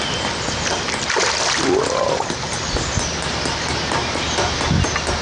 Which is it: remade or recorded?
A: recorded